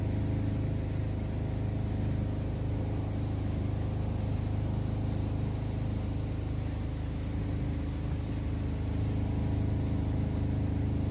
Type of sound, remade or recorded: recorded